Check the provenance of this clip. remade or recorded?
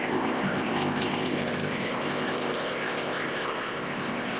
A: remade